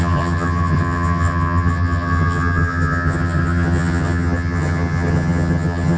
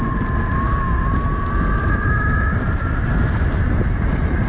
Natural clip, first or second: second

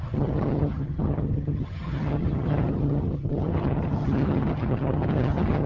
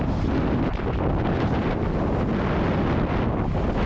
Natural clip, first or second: second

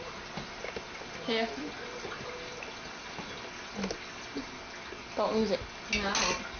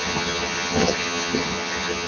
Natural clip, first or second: first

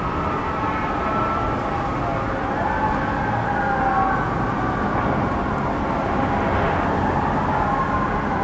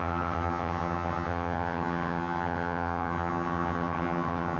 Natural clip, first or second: first